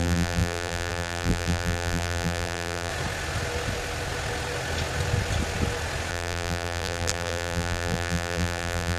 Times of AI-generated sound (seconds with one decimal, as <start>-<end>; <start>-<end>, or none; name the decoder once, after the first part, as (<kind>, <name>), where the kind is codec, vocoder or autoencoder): 0.0-2.9 (vocoder, BigVGAN v2); 6.1-9.0

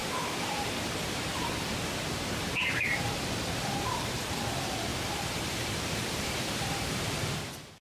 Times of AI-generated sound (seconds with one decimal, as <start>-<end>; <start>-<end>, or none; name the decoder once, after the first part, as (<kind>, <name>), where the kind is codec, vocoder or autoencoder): 0.0-3.2 (vocoder, BigVGAN v2); 4.9-7.3

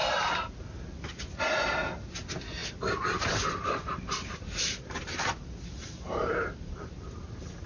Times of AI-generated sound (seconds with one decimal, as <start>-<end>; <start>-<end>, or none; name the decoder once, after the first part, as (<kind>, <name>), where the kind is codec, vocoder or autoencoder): 0.0-0.6 (vocoder, BigVGAN v2); 2.6-7.0

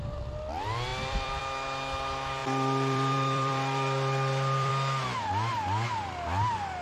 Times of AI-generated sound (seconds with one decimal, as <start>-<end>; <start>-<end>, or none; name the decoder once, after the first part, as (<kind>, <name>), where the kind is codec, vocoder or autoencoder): 0.9-1.4 (vocoder, BigVGAN v2); 2.4-4.7

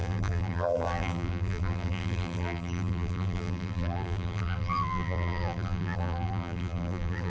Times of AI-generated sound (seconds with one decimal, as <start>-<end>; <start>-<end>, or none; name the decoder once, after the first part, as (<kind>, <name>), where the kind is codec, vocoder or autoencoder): 0.0-7.3 (vocoder, BigVGAN v2)